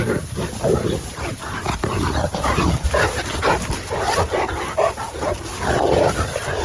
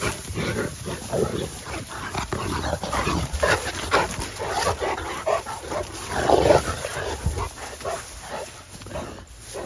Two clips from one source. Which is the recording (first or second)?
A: second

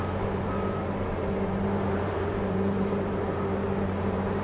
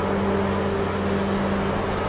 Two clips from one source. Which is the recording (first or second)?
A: second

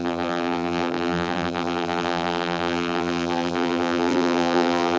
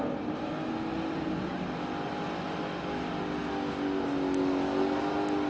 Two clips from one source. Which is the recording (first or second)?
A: second